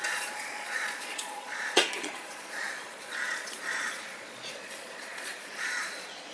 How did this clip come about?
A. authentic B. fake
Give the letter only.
B